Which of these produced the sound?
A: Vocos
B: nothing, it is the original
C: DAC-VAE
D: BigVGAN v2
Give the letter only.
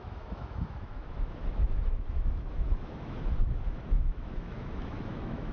C